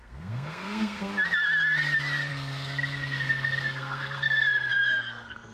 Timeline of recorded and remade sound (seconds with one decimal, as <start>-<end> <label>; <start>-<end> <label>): 0.0-1.1 remade; 1.1-2.3 recorded; 2.3-5.5 remade